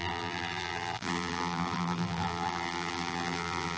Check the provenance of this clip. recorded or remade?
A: remade